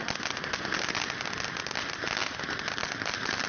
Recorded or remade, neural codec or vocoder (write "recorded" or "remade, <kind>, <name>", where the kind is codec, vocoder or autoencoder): recorded